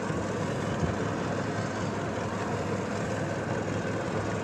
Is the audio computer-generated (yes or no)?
no